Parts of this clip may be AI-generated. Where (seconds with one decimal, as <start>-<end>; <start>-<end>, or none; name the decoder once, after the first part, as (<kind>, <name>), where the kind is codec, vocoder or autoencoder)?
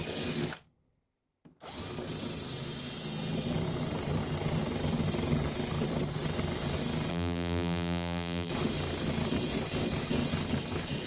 7.1-8.5 (vocoder, BigVGAN v2)